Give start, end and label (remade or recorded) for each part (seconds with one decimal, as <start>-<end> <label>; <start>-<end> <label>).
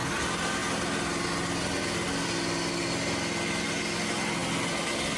0.0-5.2 recorded